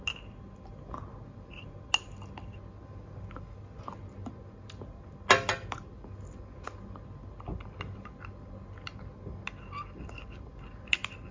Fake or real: real